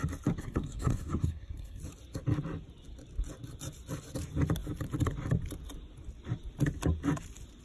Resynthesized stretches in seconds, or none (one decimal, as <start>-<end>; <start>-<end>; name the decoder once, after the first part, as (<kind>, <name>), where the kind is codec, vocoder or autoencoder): 0.4-1.8 (codec, SNAC)